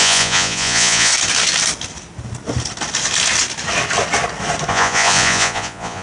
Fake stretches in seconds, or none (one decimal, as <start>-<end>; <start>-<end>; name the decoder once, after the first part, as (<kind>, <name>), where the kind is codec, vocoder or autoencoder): 0.0-1.1 (vocoder, Vocos); 4.7-6.0